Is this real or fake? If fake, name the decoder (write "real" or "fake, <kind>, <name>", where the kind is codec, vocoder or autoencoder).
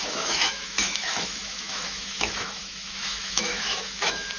fake, autoencoder, DAC-VAE